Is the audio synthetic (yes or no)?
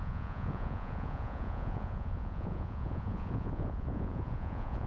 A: yes